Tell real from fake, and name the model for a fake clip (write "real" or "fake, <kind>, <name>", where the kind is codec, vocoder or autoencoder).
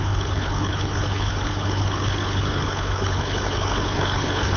fake, codec, HILCodec